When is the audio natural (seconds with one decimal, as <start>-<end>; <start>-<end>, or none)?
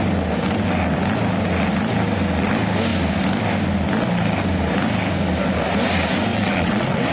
0.0-6.3